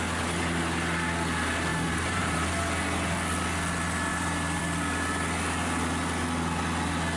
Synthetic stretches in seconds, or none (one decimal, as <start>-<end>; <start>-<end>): 1.7-2.4; 4.1-4.6